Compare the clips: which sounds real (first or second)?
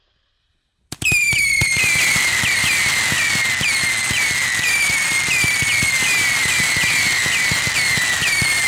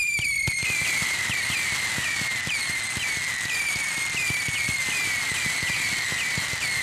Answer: first